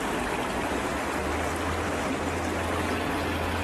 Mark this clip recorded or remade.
recorded